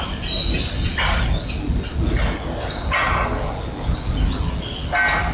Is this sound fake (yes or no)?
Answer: no